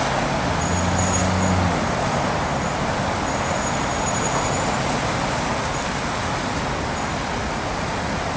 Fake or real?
real